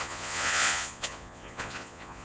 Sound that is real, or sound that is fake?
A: fake